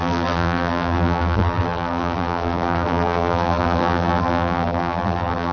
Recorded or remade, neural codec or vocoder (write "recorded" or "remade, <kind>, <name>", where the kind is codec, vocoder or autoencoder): remade, vocoder, BigVGAN v2